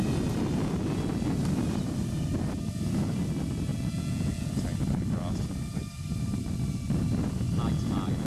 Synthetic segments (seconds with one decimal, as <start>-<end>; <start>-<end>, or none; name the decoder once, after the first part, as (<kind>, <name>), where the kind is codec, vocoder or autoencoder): 3.7-4.5 (vocoder, Vocos)